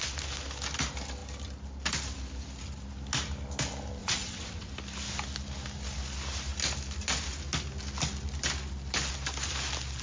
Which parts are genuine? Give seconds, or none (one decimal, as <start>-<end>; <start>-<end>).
0.0-4.0; 4.7-10.0